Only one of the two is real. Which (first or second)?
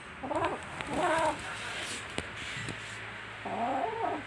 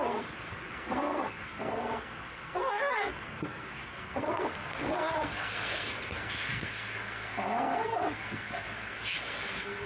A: first